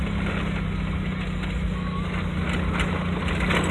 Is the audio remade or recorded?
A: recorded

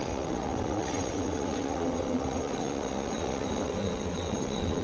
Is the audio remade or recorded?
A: remade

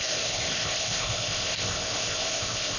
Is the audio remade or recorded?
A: remade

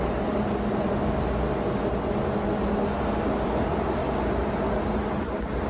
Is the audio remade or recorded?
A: recorded